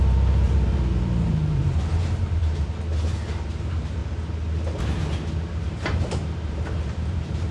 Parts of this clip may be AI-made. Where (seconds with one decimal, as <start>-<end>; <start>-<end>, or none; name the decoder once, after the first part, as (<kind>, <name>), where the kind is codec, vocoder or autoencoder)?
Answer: 0.0-2.4 (vocoder, BigVGAN v2); 3.5-4.0; 5.6-7.5